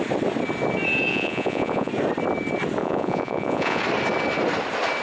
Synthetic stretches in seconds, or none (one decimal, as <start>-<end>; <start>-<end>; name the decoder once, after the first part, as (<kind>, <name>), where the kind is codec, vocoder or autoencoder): 1.1-1.9 (vocoder, Vocos); 2.8-3.8